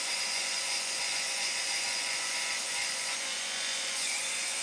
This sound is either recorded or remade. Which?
remade